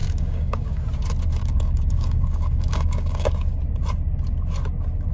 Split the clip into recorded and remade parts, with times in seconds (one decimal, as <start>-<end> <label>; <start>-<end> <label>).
0.0-0.8 remade; 0.8-1.4 recorded; 1.4-3.6 remade; 3.6-5.1 recorded